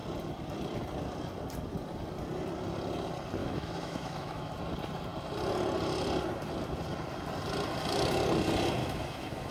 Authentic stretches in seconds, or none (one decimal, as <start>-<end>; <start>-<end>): 0.0-3.4; 4.5-8.8